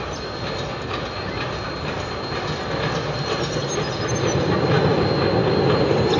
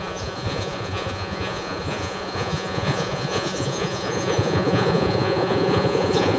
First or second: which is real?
first